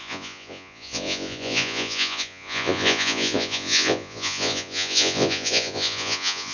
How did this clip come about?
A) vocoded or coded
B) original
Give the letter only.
A